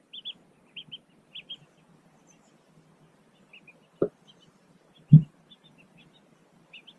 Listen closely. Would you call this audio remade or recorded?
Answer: recorded